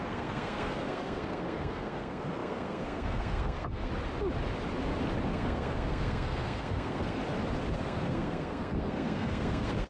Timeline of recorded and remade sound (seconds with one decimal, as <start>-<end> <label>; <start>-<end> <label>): 0.0-3.9 remade; 3.9-5.3 recorded; 5.3-7.2 remade; 7.2-7.7 recorded; 7.7-9.9 remade